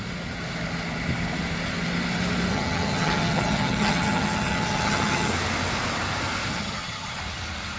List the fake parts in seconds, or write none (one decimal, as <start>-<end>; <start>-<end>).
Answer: 2.5-5.3; 6.5-7.2